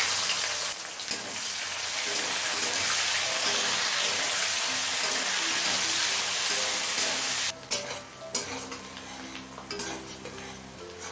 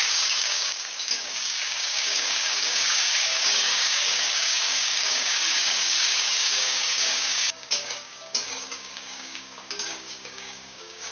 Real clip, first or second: first